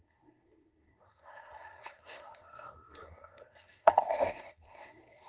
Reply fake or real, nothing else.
fake